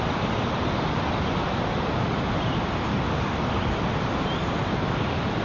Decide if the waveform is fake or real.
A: real